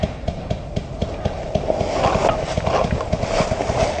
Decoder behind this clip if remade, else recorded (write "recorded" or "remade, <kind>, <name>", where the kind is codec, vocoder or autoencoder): recorded